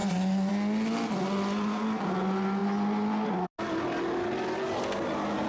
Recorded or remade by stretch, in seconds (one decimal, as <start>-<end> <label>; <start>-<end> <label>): 0.0-5.5 recorded